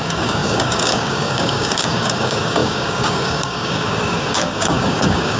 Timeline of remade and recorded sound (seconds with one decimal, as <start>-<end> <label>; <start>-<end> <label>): 0.0-5.4 remade